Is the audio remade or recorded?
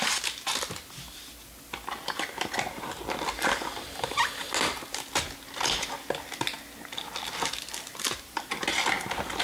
recorded